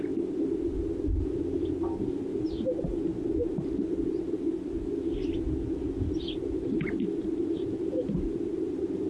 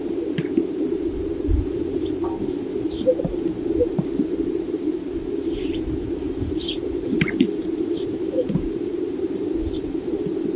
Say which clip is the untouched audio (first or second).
first